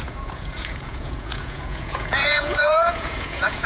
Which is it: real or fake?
fake